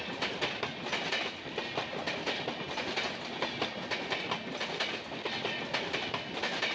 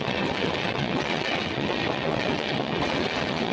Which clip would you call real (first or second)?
first